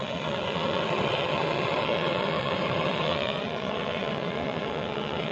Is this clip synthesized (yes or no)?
yes